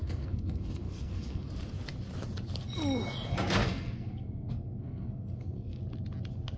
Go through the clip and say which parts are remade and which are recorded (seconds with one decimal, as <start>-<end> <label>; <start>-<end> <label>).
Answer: 0.0-1.5 remade; 1.5-3.6 recorded; 3.6-5.8 remade; 5.8-6.6 recorded